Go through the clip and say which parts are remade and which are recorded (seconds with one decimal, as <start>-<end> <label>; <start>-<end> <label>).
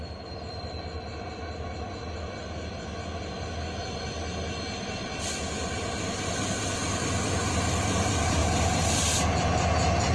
0.0-10.1 recorded